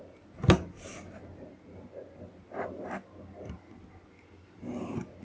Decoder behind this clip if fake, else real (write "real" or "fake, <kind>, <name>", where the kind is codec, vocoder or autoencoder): real